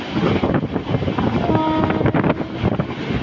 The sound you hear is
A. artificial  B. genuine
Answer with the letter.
B